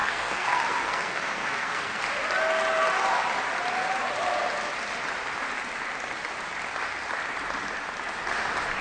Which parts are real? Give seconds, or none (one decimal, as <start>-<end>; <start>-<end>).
2.0-8.8